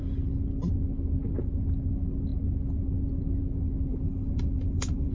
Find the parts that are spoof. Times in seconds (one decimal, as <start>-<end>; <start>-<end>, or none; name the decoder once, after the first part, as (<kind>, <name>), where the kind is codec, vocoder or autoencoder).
3.9-5.1 (vocoder, BigVGAN v2)